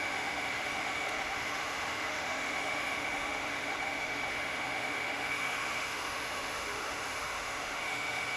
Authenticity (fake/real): fake